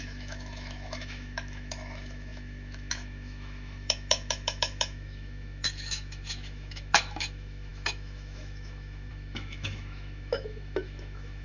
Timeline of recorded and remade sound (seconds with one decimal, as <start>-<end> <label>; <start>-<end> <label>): 0.0-11.4 remade